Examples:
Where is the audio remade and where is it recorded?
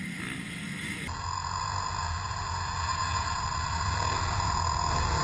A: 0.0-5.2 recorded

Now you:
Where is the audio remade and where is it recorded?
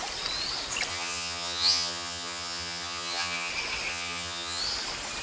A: 0.0-0.9 recorded; 0.9-3.5 remade; 3.5-3.9 recorded; 3.9-4.6 remade; 4.6-5.2 recorded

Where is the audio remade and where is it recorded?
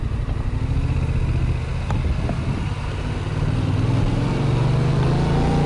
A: 0.0-5.7 recorded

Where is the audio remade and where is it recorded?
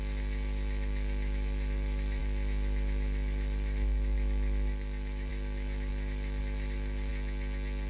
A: 0.0-7.1 remade; 7.1-7.9 recorded